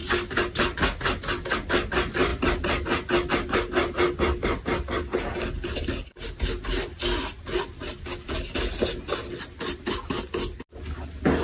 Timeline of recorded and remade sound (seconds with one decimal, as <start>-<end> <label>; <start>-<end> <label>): 0.0-11.4 recorded